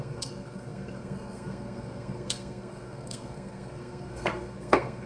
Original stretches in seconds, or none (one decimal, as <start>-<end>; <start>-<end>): none